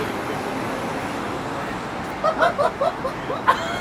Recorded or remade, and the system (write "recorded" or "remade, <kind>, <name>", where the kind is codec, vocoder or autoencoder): recorded